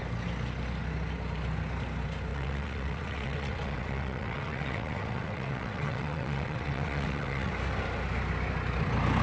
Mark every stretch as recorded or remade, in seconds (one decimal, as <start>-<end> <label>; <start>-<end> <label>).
0.0-2.3 recorded; 2.3-7.5 remade; 7.5-9.2 recorded